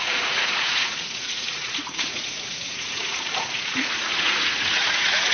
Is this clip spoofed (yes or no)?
yes